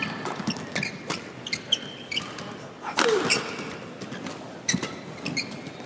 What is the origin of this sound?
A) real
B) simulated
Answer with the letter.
A